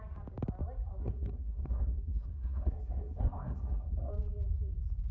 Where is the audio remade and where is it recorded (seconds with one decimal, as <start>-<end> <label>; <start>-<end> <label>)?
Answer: 0.0-1.0 recorded; 1.0-4.1 remade; 4.1-5.1 recorded